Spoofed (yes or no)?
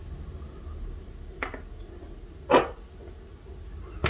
no